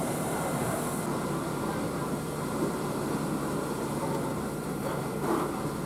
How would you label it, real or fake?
fake